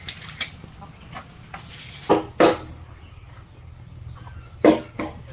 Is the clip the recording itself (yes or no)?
yes